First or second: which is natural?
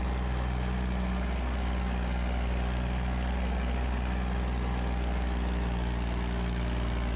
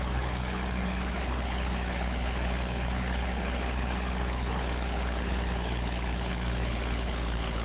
first